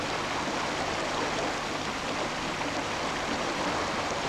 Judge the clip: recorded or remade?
recorded